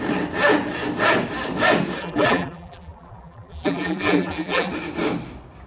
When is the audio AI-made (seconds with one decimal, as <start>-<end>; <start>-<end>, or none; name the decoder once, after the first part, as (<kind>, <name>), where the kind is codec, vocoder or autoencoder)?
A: 2.0-4.7 (vocoder, BigVGAN v2)